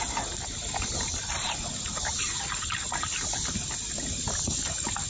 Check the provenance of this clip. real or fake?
real